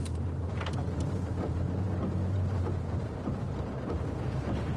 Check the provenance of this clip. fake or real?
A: fake